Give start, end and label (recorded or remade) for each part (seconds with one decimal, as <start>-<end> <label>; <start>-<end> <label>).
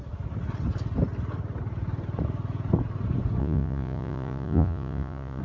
0.0-3.4 recorded; 3.4-5.4 remade